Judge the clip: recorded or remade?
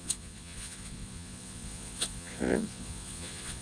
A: remade